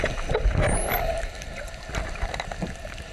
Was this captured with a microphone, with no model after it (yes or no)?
yes